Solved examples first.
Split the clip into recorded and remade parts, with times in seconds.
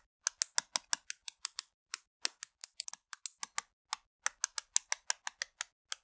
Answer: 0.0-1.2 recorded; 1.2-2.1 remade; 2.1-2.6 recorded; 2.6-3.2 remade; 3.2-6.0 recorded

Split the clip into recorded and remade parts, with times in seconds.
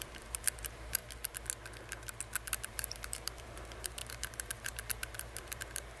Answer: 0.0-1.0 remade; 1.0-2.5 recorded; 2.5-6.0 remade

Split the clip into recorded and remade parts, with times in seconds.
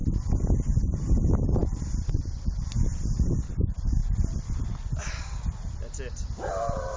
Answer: 0.0-0.8 recorded; 0.8-4.0 remade; 4.0-6.5 recorded; 6.5-7.0 remade